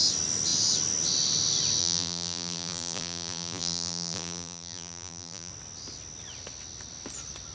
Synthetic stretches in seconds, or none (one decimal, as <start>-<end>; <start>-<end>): 1.8-5.5